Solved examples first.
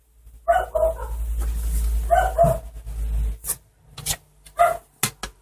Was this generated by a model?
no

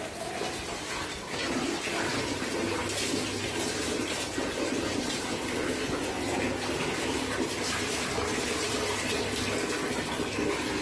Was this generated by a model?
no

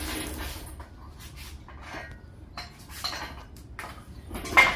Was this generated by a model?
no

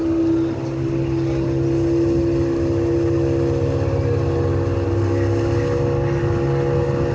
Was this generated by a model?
no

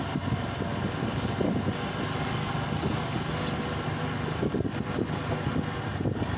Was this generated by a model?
no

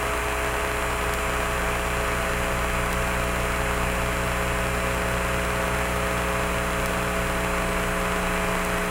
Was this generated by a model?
no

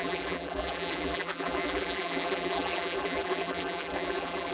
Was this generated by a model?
yes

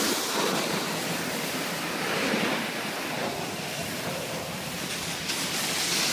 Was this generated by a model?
no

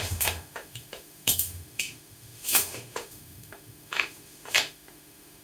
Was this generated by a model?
yes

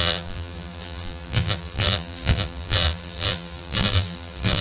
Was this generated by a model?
yes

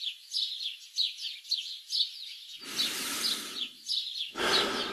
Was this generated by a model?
no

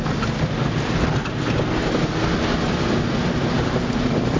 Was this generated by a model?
no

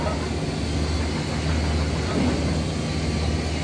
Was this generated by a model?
no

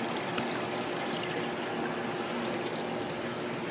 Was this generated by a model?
no